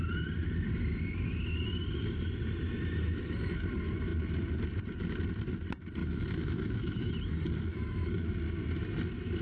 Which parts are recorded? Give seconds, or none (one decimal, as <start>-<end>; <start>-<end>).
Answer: 0.0-6.0; 7.1-7.7; 8.3-9.4